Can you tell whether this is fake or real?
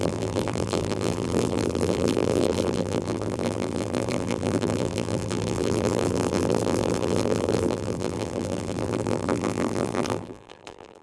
fake